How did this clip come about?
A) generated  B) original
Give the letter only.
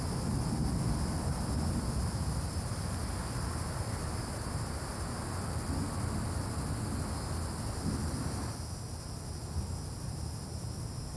B